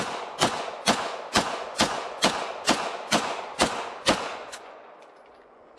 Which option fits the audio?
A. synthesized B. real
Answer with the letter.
A